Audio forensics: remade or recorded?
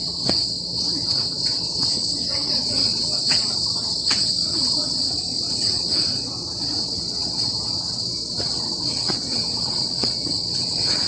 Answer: remade